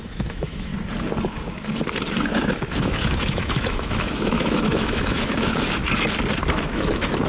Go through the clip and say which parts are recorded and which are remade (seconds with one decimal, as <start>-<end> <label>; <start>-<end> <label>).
0.0-0.7 remade; 0.7-2.3 recorded; 2.3-5.8 remade; 5.8-6.5 recorded; 6.5-7.3 remade